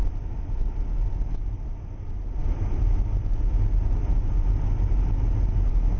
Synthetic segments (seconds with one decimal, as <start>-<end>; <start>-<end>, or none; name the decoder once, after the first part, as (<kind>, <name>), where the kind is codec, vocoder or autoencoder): none